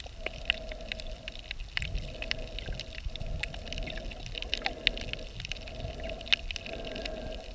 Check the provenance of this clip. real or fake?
real